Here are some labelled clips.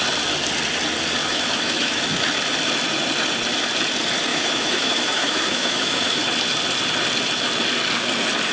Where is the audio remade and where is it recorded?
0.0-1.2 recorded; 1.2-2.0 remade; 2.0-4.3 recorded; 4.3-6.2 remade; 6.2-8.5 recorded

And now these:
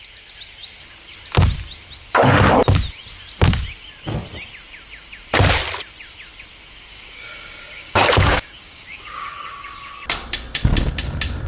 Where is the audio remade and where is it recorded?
0.0-6.9 recorded; 6.9-9.9 remade; 9.9-11.5 recorded

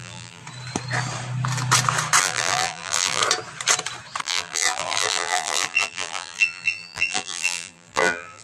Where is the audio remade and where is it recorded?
0.0-0.4 remade; 0.4-2.2 recorded; 2.2-3.2 remade; 3.2-4.2 recorded; 4.2-8.4 remade

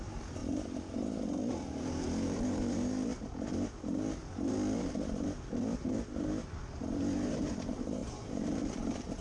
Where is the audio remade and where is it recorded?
0.0-0.4 remade; 0.4-1.5 recorded; 1.5-3.1 remade; 3.1-7.0 recorded; 7.0-9.2 remade